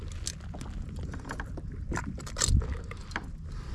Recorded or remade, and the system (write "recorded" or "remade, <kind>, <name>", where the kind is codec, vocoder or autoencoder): recorded